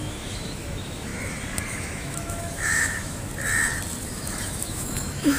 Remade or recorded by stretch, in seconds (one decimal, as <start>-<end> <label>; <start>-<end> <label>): 0.0-1.1 remade; 1.1-1.7 recorded; 1.7-3.3 remade; 3.3-4.0 recorded; 4.0-5.4 remade